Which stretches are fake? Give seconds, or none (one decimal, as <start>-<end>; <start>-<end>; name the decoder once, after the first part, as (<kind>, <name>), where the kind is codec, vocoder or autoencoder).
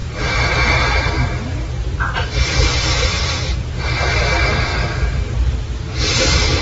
3.1-3.8 (vocoder, BigVGAN v2); 4.7-5.8